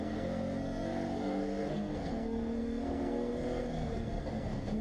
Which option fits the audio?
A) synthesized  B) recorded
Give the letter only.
A